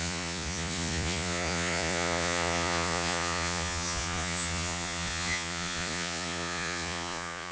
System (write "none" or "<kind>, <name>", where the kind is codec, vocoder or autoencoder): vocoder, Vocos